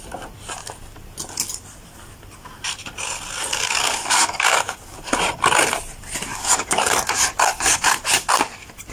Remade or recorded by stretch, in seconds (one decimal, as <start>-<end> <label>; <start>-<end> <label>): 0.0-3.5 recorded; 3.5-5.2 remade; 5.2-6.3 recorded; 6.3-8.3 remade; 8.3-8.9 recorded

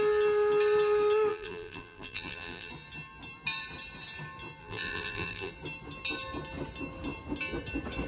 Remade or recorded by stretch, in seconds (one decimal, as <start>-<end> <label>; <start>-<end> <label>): 0.0-1.3 recorded; 1.3-2.7 remade; 2.7-4.6 recorded; 4.6-5.5 remade; 5.5-8.1 recorded

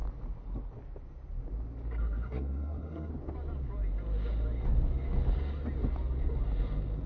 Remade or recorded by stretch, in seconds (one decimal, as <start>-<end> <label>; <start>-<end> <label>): 0.0-2.0 recorded; 2.0-3.1 remade; 3.1-7.1 recorded

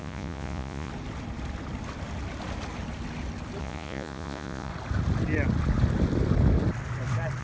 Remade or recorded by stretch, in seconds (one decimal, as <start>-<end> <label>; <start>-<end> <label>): 0.0-0.9 remade; 0.9-3.6 recorded; 3.6-4.7 remade; 4.7-7.4 recorded